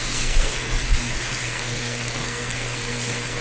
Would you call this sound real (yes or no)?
no